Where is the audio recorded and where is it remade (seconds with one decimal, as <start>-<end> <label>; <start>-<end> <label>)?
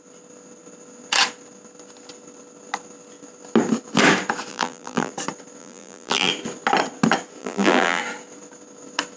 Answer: 0.0-4.5 recorded; 4.5-5.1 remade; 5.1-5.6 recorded; 5.6-6.3 remade; 6.3-7.4 recorded; 7.4-8.0 remade; 8.0-9.2 recorded